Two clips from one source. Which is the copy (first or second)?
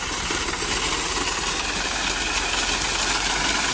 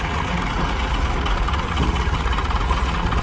second